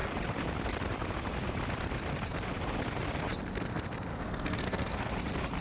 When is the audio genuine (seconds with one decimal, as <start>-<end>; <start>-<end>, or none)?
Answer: 0.0-4.1; 5.1-5.6